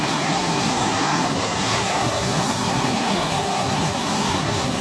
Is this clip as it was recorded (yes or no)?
no